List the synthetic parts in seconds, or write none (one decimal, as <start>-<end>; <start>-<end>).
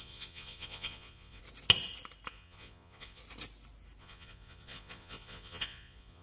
0.0-1.4; 2.3-3.2; 4.0-6.2